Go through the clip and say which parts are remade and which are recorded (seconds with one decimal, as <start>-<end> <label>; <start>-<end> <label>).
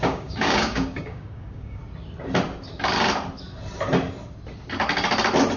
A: 0.0-1.8 remade; 1.8-5.6 recorded